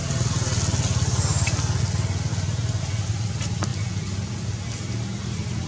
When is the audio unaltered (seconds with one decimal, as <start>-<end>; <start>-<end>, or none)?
0.0-5.7